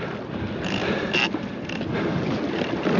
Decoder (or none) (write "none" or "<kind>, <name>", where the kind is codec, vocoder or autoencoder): none